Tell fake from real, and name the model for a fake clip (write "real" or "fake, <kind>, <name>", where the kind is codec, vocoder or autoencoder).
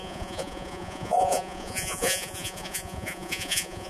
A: fake, vocoder, Vocos